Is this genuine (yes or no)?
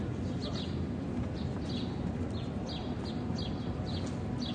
yes